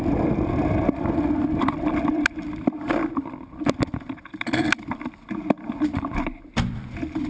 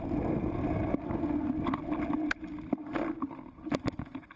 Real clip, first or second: second